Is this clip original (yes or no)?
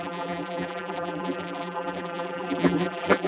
no